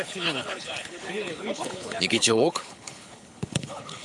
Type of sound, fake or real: fake